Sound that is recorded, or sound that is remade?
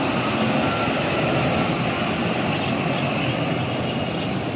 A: recorded